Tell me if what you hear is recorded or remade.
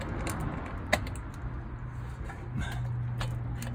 recorded